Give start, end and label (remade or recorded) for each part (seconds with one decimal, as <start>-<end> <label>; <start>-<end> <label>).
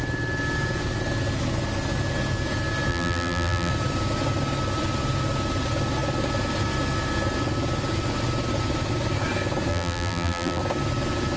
0.0-2.9 recorded; 2.9-3.7 remade; 3.7-9.7 recorded; 9.7-10.6 remade; 10.6-11.4 recorded